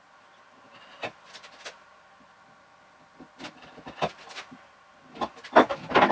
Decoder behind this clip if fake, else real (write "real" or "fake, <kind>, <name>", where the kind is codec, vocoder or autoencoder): real